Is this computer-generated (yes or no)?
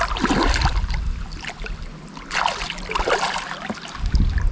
no